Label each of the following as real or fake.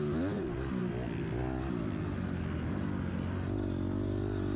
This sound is real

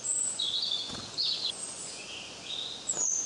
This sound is fake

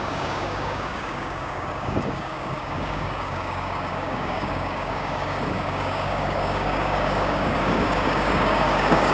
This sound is fake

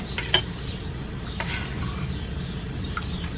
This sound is real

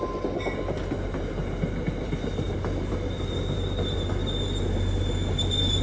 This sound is real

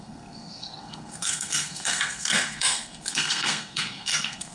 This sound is fake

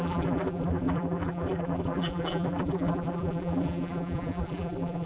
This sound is fake